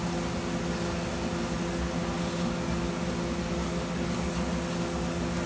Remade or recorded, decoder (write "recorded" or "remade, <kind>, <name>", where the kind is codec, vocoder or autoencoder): recorded